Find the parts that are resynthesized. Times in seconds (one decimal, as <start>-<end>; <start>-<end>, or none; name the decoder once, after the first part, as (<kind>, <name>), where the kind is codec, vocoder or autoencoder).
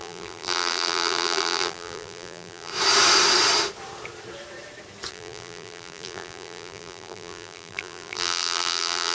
0.0-2.7 (vocoder, BigVGAN v2); 5.1-9.1